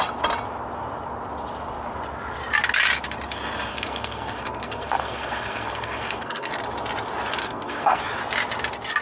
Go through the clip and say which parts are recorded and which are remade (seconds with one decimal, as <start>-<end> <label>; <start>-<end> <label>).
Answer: 0.0-3.7 recorded; 3.7-6.5 remade; 6.5-7.4 recorded; 7.4-8.0 remade; 8.0-9.0 recorded

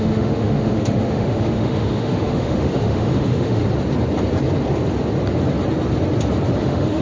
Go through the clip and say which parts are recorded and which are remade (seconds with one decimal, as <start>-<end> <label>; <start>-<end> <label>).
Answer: 0.0-3.6 remade; 3.6-6.6 recorded; 6.6-7.0 remade

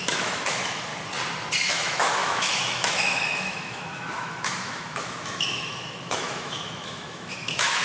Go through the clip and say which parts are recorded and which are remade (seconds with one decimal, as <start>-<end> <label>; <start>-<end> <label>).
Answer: 0.0-0.9 remade; 0.9-1.7 recorded; 1.7-7.8 remade

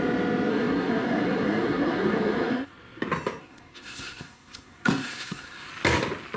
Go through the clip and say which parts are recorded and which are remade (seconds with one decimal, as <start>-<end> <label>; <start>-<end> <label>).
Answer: 0.0-0.5 recorded; 0.5-2.7 remade; 2.7-3.4 recorded; 3.4-5.7 remade; 5.7-6.4 recorded

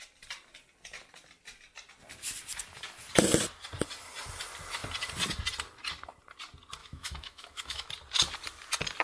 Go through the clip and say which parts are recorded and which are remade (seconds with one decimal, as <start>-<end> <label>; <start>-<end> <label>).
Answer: 0.0-6.8 recorded; 6.8-7.9 remade; 7.9-9.0 recorded